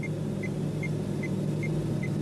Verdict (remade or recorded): recorded